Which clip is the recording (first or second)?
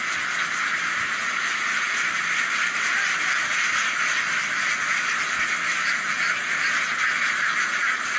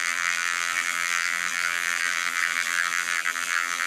first